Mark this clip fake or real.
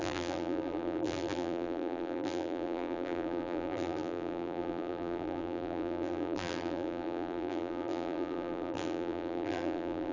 fake